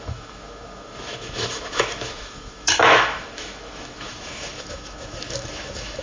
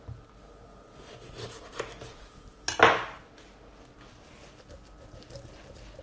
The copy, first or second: first